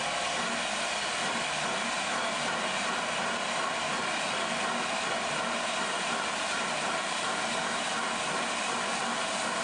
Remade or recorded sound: recorded